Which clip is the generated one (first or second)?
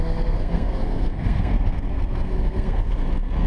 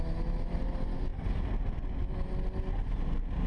first